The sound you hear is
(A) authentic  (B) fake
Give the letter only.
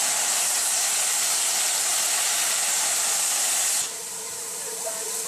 A